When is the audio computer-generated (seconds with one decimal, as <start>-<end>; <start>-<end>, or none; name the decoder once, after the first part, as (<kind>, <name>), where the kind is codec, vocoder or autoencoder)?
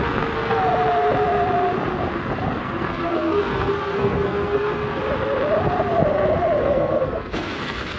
0.0-0.6 (codec, SNAC); 2.5-5.0; 6.6-8.0